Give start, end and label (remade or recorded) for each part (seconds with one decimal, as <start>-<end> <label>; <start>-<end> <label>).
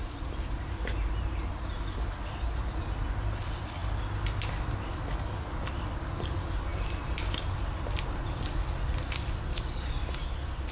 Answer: 0.0-10.7 recorded